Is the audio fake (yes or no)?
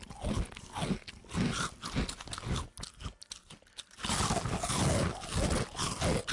no